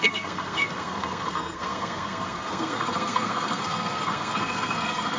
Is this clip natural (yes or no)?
no